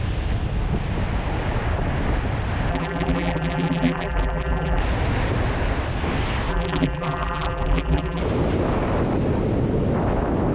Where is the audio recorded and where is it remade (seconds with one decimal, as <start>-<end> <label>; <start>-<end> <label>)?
0.0-2.7 recorded; 2.7-4.8 remade; 4.8-6.5 recorded; 6.5-8.2 remade; 8.2-10.5 recorded